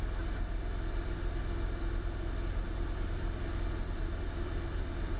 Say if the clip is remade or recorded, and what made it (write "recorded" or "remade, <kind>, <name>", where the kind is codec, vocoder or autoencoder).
recorded